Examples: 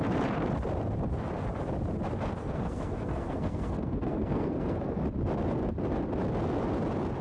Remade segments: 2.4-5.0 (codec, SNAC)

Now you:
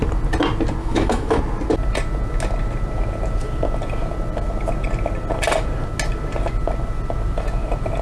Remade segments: 0.8-1.4 (autoencoder, DAC-VAE)

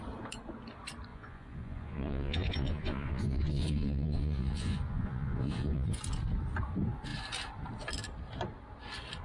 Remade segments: 1.1-6.0 (vocoder, Vocos)